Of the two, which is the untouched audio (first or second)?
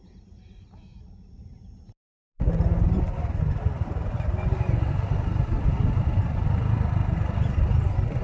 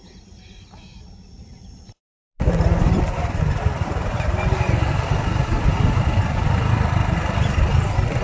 first